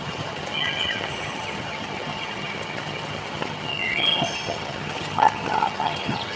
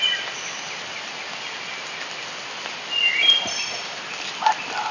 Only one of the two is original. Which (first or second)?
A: second